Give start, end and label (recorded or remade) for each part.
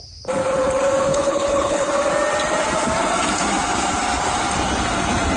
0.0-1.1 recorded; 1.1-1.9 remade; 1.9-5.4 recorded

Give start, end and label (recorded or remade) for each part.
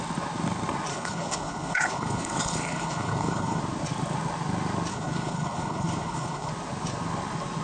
0.0-0.9 recorded; 0.9-3.6 remade; 3.6-4.9 recorded; 4.9-6.5 remade; 6.5-7.6 recorded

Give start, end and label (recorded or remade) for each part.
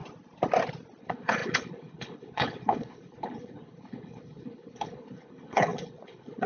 0.0-1.0 recorded; 1.0-6.5 remade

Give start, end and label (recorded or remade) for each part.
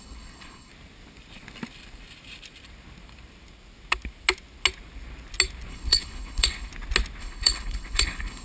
0.0-0.7 remade; 0.7-5.7 recorded; 5.7-6.7 remade; 6.7-7.2 recorded; 7.2-8.4 remade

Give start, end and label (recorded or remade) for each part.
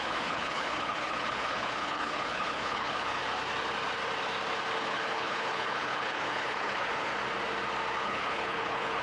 0.0-3.2 remade; 3.2-4.8 recorded; 4.8-7.1 remade; 7.1-8.0 recorded; 8.0-9.0 remade